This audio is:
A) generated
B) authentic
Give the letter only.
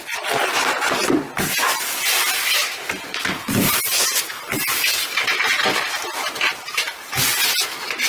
B